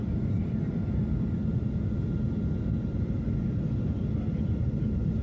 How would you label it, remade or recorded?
recorded